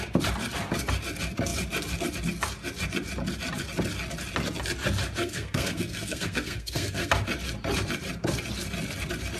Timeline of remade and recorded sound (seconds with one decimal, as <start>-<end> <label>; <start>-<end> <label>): 0.0-5.2 recorded; 5.2-7.1 remade; 7.1-9.4 recorded